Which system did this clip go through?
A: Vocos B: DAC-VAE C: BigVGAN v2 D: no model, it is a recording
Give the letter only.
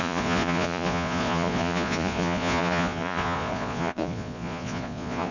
A